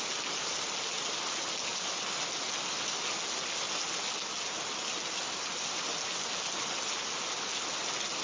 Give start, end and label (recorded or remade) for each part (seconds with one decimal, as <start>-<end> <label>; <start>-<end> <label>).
0.0-8.2 recorded